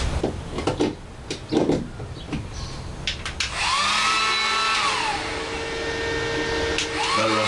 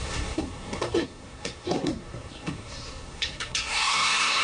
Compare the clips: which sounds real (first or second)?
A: first